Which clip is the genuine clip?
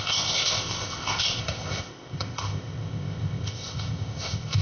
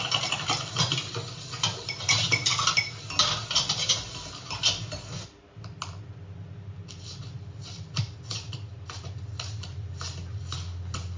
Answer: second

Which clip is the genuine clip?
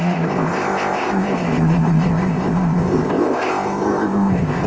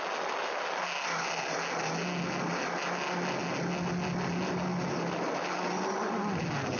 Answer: second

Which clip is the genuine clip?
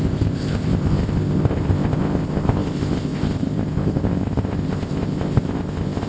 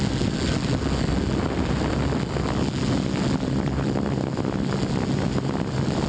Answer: second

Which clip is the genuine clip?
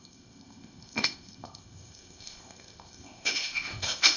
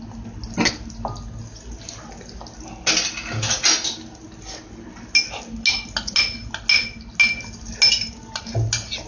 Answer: second